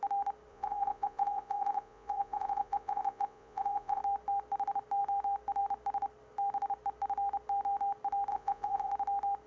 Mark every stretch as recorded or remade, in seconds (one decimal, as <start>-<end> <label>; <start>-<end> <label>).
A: 0.0-0.5 recorded; 0.5-4.0 remade; 4.0-8.3 recorded; 8.3-8.9 remade; 8.9-9.5 recorded